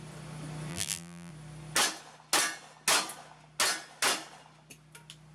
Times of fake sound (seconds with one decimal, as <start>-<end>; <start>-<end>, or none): 0.7-1.3